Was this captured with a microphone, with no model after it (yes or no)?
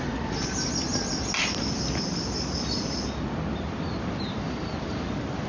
yes